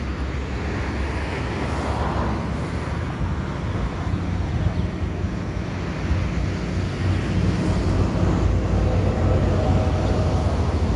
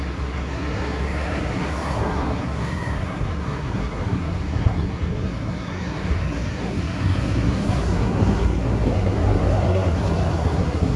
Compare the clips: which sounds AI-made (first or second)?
second